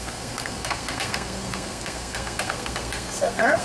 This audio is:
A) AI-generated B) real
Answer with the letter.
A